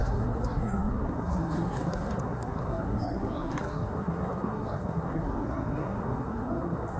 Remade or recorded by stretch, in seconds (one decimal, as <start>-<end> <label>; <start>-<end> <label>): 0.0-7.0 remade